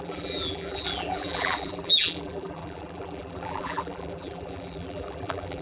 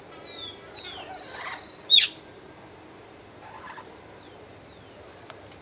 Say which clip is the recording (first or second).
second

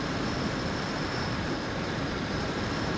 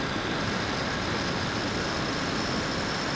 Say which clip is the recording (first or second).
second